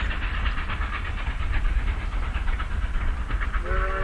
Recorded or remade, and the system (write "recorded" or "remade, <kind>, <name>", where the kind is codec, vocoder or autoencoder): recorded